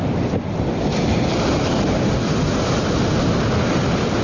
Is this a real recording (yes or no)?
yes